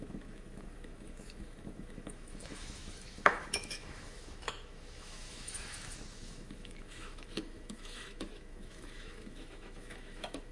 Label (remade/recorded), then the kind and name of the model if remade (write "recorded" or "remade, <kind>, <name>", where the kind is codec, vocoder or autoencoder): remade, autoencoder, DAC-VAE